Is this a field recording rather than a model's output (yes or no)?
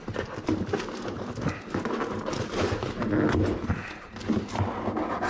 yes